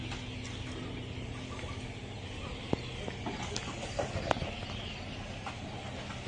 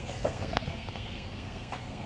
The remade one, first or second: second